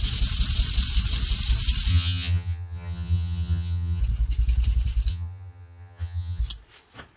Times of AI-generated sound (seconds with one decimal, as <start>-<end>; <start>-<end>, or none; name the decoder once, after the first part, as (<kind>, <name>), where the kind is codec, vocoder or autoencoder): 1.9-4.0 (vocoder, HiFi-GAN); 5.1-6.4